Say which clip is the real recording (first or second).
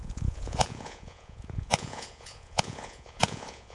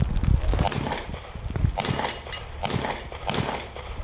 second